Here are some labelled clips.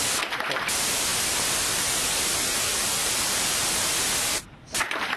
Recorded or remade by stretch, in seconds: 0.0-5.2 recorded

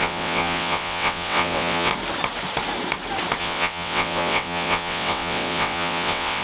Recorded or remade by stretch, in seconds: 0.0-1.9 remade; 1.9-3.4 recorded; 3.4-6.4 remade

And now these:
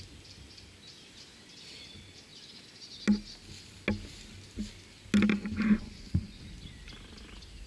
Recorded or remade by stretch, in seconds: 0.0-5.3 recorded; 5.3-6.4 remade; 6.4-7.7 recorded

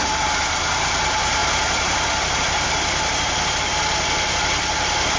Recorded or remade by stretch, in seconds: 0.0-5.2 recorded

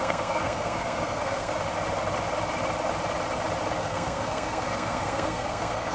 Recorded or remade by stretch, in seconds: 0.0-1.5 remade; 1.5-3.8 recorded; 3.8-5.9 remade